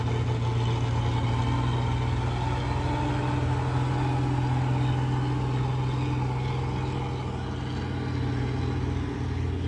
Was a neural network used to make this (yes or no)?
no